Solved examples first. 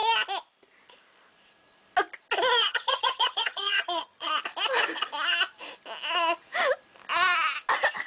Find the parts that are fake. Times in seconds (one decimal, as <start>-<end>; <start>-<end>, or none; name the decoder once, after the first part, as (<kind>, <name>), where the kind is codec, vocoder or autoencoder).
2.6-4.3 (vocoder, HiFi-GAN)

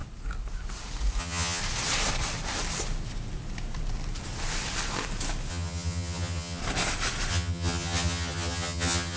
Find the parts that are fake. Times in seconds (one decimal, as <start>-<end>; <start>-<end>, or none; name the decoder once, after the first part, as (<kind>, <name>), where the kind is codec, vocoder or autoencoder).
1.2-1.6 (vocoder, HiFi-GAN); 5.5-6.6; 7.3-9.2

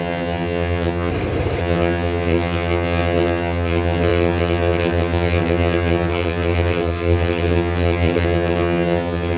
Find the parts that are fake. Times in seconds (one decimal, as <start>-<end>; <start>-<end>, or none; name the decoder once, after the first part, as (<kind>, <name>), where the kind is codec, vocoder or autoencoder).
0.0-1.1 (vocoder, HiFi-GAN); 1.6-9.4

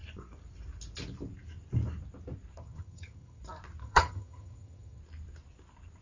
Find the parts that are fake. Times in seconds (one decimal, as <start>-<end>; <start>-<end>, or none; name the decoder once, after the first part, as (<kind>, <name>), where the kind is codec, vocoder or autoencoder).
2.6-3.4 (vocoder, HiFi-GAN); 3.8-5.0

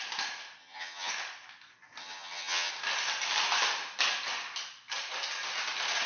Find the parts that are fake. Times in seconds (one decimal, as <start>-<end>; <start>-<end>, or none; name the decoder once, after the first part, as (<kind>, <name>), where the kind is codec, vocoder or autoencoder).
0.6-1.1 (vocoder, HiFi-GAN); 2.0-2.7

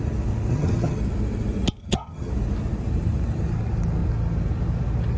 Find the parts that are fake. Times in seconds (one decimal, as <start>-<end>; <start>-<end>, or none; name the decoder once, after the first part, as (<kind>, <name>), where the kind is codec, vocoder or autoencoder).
0.5-1.0 (vocoder, HiFi-GAN); 1.8-2.3

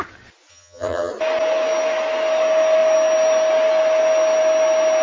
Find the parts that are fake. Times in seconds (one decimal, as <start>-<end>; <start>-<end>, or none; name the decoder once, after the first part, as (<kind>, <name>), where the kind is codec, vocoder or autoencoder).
0.5-1.1 (vocoder, HiFi-GAN)